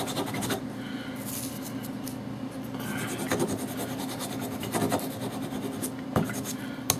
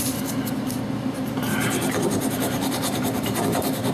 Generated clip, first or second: second